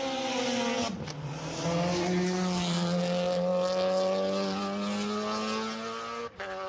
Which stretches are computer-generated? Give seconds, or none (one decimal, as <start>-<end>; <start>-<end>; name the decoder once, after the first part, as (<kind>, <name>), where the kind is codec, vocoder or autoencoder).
none